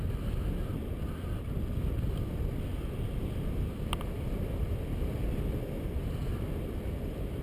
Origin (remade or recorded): recorded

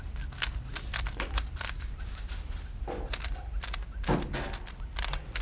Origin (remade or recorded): recorded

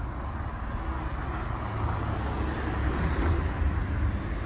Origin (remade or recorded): recorded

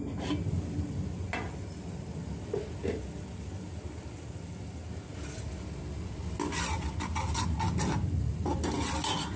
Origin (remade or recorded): recorded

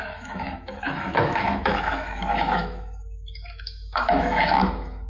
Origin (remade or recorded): remade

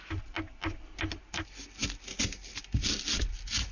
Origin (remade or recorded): recorded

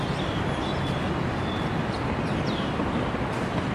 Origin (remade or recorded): recorded